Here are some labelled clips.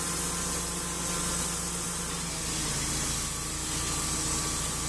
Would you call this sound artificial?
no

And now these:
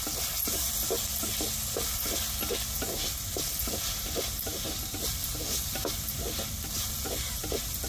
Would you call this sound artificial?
no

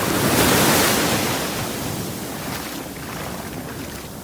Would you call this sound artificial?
no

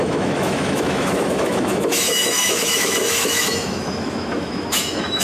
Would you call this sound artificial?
yes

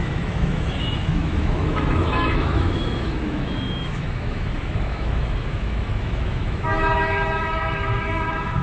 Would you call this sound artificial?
yes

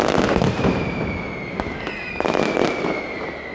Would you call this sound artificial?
no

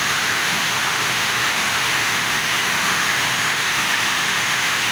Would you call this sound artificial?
yes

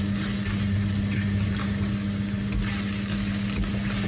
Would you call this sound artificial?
no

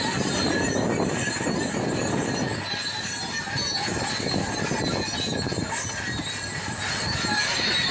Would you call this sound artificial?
no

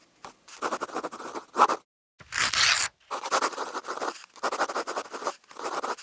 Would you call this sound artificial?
no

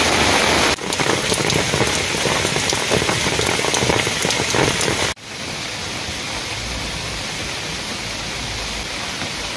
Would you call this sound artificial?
no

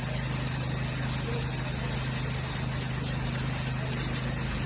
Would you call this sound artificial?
no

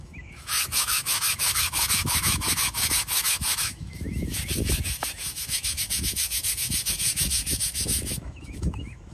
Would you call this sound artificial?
yes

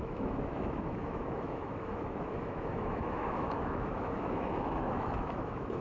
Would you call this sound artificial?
yes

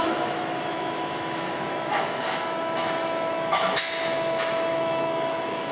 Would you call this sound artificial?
yes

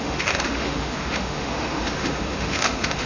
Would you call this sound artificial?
yes